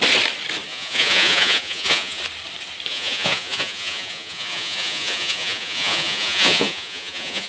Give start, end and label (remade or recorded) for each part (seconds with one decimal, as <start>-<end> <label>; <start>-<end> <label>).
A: 0.0-0.7 recorded; 0.7-2.2 remade; 2.2-2.9 recorded; 2.9-7.5 remade